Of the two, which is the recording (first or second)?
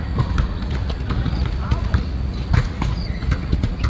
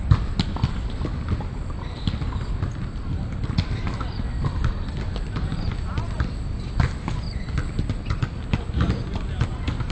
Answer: second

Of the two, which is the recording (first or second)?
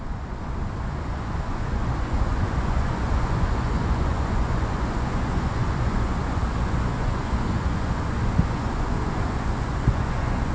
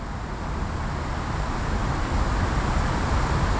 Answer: second